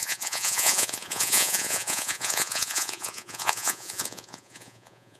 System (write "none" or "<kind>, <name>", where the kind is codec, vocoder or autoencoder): vocoder, Vocos